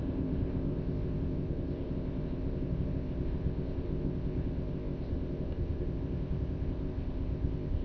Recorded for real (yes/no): no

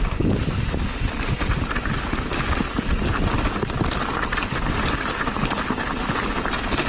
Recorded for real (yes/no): yes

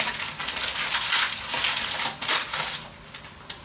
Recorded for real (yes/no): yes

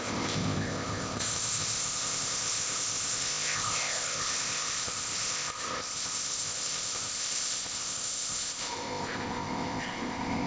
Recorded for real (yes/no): no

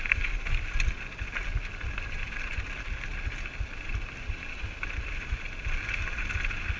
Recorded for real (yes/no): yes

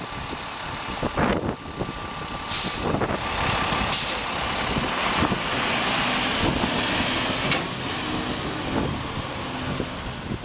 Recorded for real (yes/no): yes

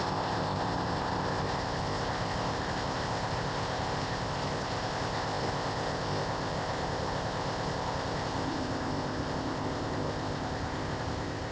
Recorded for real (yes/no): no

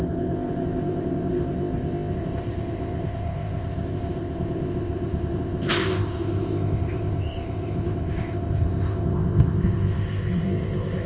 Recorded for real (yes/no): no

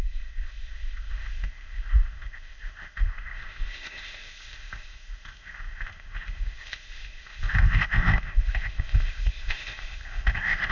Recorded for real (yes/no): no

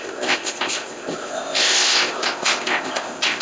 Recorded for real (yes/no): no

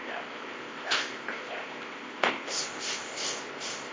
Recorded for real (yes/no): no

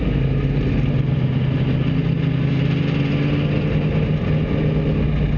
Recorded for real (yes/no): yes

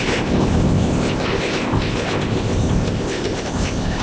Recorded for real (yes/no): no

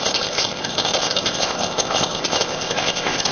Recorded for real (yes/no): no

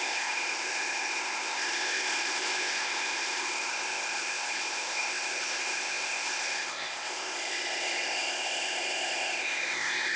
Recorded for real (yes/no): no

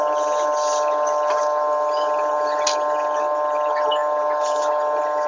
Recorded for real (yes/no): yes